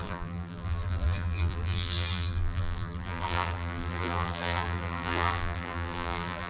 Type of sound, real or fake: fake